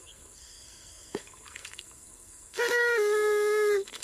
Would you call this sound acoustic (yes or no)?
no